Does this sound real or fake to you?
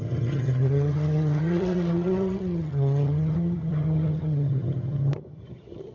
fake